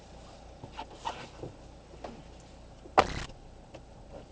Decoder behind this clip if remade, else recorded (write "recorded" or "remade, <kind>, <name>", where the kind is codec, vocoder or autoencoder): recorded